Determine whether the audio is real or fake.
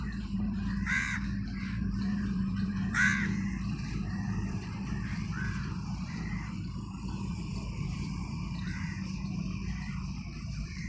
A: fake